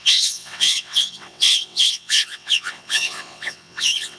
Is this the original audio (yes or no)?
no